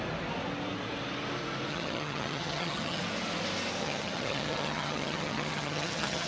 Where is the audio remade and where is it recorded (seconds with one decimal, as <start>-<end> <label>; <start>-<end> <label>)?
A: 0.0-1.7 recorded; 1.7-3.0 remade; 3.0-3.8 recorded; 3.8-6.3 remade